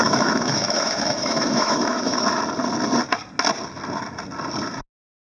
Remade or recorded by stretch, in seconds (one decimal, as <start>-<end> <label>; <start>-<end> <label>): 0.0-2.2 remade; 2.2-5.3 recorded